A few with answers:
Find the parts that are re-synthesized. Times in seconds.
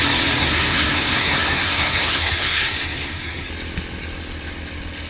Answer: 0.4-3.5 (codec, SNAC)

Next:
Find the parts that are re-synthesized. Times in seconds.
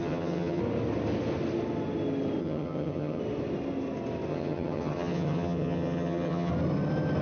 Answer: 0.0-0.6 (vocoder, HiFi-GAN); 2.4-3.2; 4.3-6.5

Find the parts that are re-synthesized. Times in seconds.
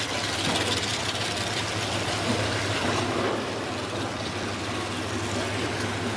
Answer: 0.9-4.6 (vocoder, BigVGAN v2)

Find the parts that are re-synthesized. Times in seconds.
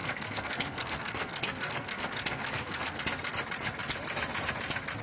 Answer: 0.0-3.0 (codec, SNAC)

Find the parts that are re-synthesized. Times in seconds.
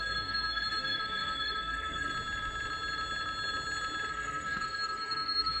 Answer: 0.0-2.1 (codec, SNAC); 4.1-5.6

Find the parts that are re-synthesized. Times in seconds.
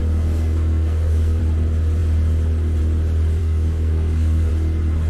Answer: 0.0-1.4 (codec, SNAC); 3.4-4.5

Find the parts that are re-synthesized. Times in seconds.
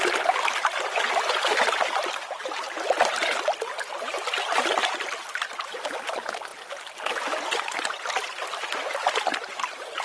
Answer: none